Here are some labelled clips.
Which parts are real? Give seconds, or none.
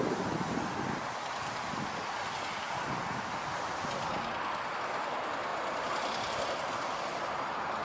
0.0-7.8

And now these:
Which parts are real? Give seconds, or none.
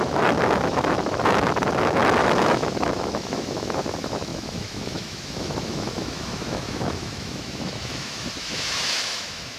none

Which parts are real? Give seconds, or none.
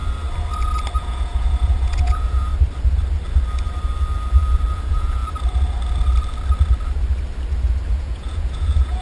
0.0-1.0; 2.5-4.7; 5.2-7.9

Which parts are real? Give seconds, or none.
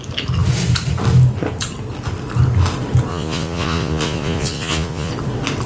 0.0-3.1; 5.1-5.7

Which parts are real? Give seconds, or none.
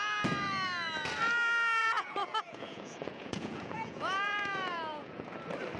0.0-1.8; 5.3-5.8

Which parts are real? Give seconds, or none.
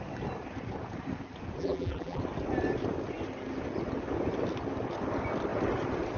0.0-1.6; 2.2-6.2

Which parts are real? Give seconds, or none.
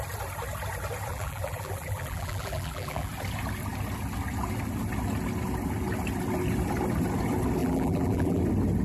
0.0-1.1; 3.1-7.6; 8.4-8.8